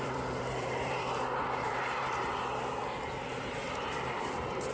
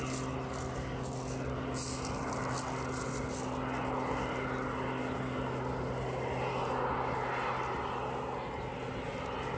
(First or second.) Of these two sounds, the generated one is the first